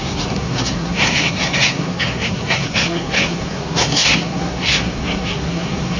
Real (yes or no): no